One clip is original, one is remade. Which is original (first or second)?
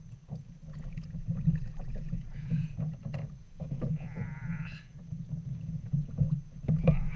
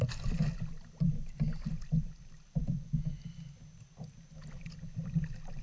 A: second